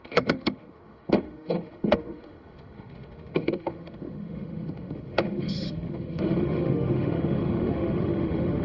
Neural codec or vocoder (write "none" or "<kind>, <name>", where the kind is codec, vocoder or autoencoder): autoencoder, DAC-VAE